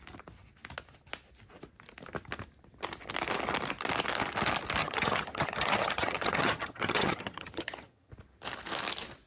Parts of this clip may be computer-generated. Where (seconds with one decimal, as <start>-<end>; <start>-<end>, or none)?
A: 4.8-8.1